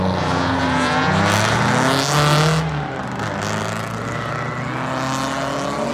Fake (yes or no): no